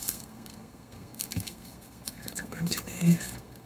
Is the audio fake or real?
fake